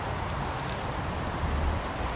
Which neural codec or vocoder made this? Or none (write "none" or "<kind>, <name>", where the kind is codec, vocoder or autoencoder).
none